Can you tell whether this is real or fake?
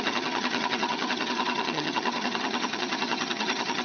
fake